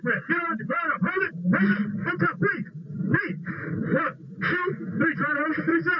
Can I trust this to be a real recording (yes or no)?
yes